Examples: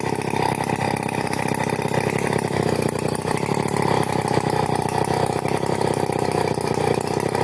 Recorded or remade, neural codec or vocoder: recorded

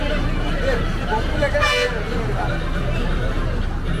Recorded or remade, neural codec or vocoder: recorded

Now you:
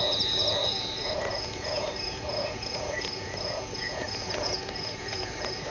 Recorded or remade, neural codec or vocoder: remade, vocoder, Vocos